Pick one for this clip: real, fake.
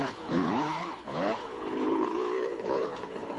fake